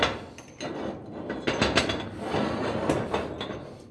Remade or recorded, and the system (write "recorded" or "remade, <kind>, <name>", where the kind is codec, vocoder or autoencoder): recorded